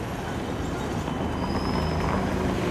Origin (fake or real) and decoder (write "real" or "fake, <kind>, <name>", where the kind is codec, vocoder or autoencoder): real